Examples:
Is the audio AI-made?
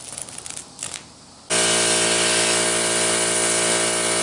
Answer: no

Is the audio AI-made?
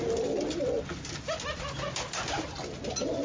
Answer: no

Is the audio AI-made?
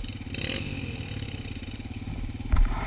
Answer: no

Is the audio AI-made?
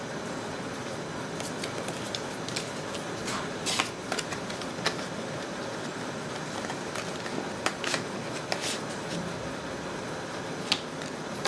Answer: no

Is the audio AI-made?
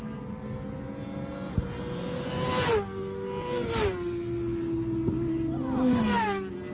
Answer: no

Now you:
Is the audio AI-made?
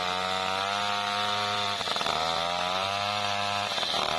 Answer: no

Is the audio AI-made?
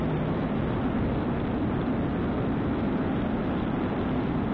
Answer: no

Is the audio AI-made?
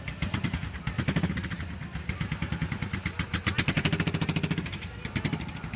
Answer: no